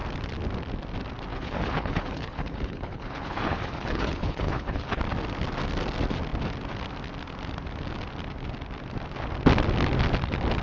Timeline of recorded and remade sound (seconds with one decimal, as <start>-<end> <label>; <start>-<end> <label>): 0.0-1.3 recorded; 1.3-5.0 remade; 5.0-10.6 recorded